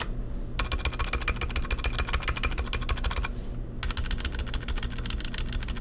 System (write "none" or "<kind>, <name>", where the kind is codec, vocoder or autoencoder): none